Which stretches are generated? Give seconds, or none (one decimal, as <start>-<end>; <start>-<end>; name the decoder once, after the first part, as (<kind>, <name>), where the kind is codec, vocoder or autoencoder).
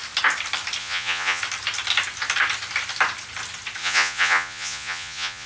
0.8-1.4 (vocoder, Vocos); 3.8-5.5